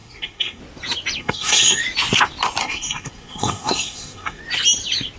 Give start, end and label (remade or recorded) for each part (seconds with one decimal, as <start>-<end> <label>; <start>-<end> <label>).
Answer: 0.0-0.6 remade; 0.6-1.2 recorded; 1.2-1.8 remade; 1.8-2.6 recorded; 2.6-4.4 remade; 4.4-5.2 recorded